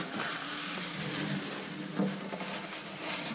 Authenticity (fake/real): real